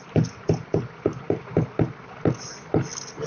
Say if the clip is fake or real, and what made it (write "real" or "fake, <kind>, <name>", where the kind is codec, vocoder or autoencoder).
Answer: real